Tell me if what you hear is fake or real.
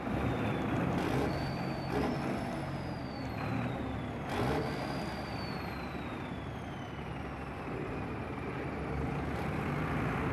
real